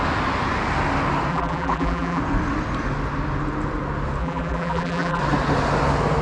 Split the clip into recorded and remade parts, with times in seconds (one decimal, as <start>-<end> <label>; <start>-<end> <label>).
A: 0.0-1.3 recorded; 1.3-2.2 remade; 2.2-4.2 recorded; 4.2-5.2 remade; 5.2-6.2 recorded